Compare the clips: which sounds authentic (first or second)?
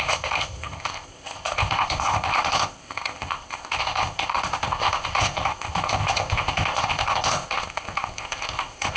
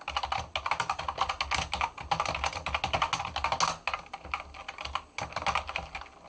second